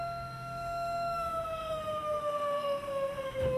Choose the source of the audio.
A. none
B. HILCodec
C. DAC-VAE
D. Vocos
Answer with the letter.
C